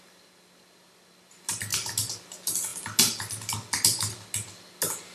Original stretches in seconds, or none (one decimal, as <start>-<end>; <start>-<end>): 0.0-5.1